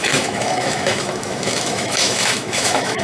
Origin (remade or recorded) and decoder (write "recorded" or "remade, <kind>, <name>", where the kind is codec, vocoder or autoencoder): remade, autoencoder, DAC-VAE